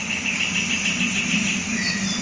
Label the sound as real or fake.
real